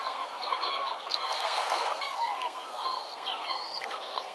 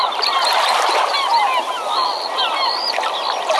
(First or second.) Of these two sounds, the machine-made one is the first